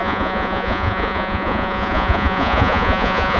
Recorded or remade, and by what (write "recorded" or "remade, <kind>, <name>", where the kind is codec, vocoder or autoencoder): remade, vocoder, Vocos